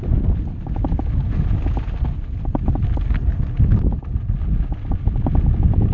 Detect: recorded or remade recorded